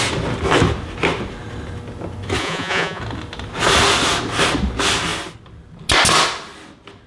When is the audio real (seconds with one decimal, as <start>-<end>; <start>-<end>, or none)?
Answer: 0.0-2.4; 3.0-7.1